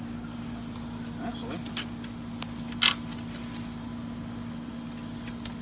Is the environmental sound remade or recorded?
recorded